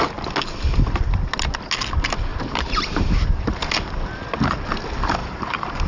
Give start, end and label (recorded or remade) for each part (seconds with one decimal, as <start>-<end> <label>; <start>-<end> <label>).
0.0-2.3 recorded; 2.3-3.7 remade; 3.7-5.2 recorded; 5.2-5.9 remade